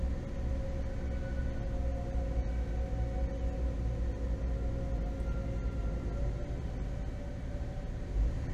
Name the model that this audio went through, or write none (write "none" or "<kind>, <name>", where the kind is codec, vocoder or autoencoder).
none